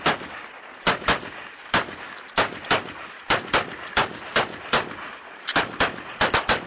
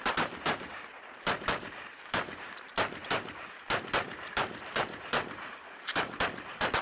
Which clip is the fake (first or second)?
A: second